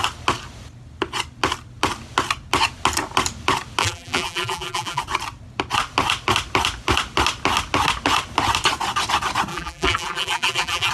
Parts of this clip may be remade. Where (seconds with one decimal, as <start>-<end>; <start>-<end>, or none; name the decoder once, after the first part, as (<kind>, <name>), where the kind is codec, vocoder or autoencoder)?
3.8-5.0 (vocoder, BigVGAN v2); 9.5-10.9